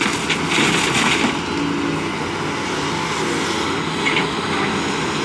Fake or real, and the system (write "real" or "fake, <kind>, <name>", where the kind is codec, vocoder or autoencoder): real